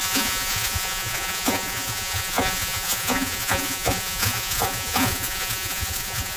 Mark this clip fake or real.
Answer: fake